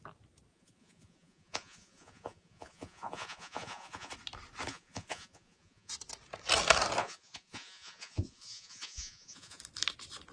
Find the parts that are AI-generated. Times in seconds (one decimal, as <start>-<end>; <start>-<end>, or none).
0.5-4.1; 4.7-5.9; 7.0-9.6